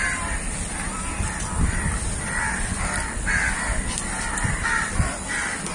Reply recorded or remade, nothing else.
recorded